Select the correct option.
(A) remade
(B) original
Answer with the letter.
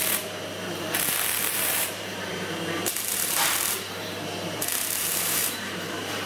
A